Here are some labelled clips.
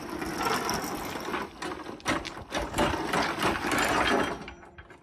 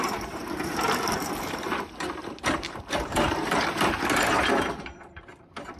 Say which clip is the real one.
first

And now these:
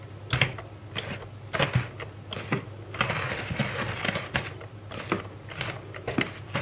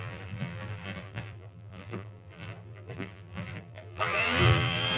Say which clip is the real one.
first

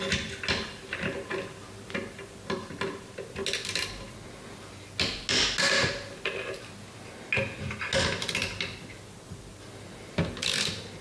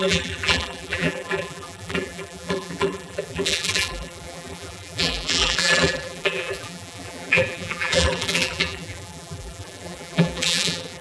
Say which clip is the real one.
first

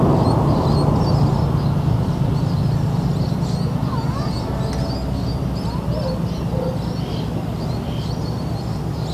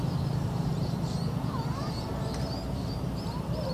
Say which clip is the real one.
first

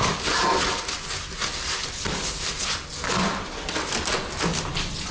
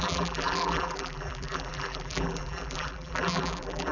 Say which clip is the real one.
first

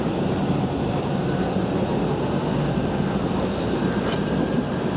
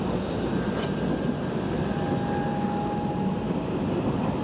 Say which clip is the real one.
second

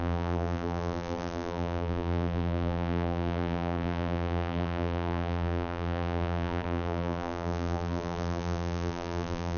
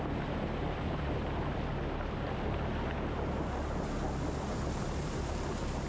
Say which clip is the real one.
second